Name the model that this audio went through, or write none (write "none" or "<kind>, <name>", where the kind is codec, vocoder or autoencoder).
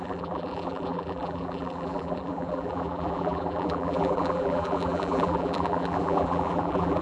vocoder, BigVGAN v2